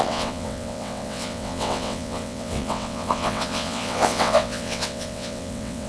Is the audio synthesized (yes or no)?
yes